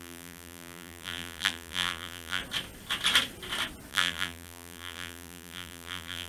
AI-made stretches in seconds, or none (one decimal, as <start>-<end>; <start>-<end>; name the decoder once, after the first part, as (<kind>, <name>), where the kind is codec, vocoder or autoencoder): 0.0-2.4 (vocoder, BigVGAN v2); 3.9-6.3